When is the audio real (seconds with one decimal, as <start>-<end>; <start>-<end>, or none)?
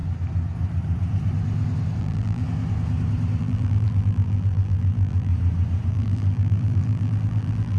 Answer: 0.0-2.0; 2.4-3.4; 5.3-5.9